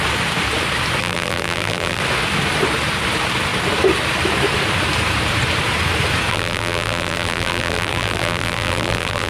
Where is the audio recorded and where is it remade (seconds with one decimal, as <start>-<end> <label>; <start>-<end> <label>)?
0.0-1.0 recorded; 1.0-2.0 remade; 2.0-6.3 recorded; 6.3-9.3 remade